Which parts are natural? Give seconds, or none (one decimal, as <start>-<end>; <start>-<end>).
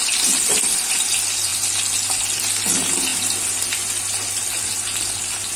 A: 0.0-5.6